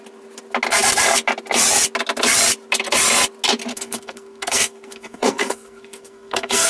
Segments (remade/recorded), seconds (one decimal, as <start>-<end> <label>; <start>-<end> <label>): 0.0-3.7 recorded; 3.7-6.7 remade